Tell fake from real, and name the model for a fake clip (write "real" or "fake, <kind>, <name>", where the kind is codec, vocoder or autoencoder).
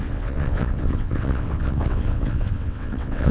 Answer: fake, vocoder, WaveNeXt